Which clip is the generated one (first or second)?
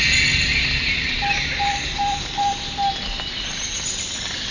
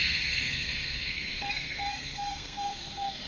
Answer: second